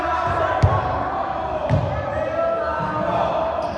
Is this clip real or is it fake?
real